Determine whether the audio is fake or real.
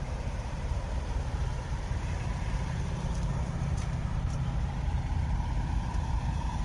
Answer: fake